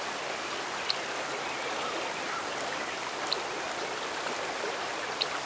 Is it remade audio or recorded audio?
recorded